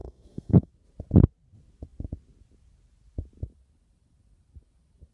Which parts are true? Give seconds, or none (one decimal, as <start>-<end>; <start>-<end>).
0.7-5.1